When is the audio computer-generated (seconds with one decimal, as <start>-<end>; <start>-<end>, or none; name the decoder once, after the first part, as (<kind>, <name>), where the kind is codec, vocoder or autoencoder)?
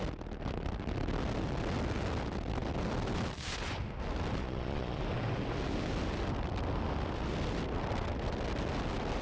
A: 4.4-5.0 (vocoder, Vocos)